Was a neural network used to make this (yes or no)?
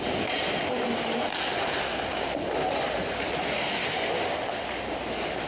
no